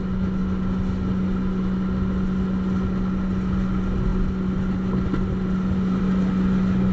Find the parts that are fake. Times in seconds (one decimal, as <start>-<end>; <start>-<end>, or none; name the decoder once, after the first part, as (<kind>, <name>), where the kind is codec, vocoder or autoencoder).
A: none